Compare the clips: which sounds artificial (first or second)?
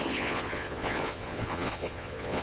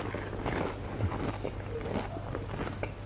first